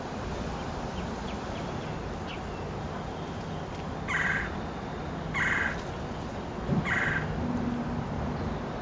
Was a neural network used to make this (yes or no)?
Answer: no